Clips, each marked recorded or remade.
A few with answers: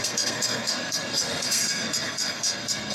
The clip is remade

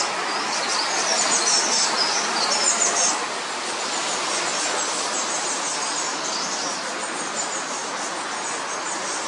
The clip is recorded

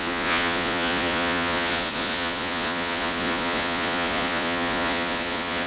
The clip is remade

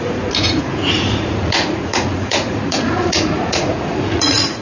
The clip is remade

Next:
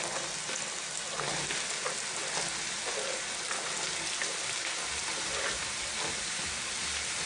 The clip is recorded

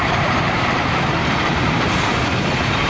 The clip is remade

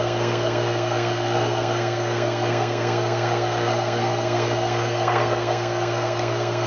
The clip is remade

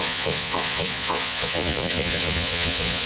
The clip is remade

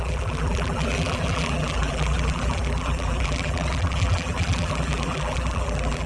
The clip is remade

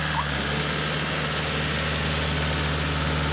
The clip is recorded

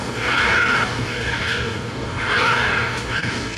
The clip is remade